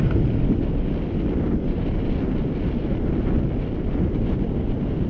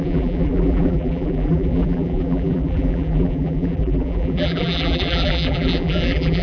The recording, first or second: first